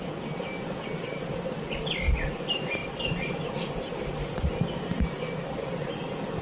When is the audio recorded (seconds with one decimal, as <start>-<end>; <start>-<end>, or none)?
0.0-6.4